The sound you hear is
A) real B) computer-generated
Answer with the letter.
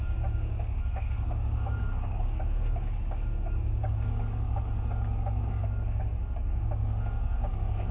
B